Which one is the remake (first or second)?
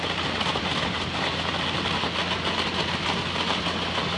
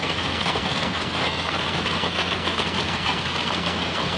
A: second